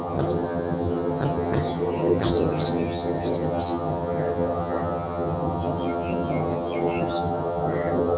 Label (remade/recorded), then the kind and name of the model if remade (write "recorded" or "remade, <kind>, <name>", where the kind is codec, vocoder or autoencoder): remade, vocoder, HiFi-GAN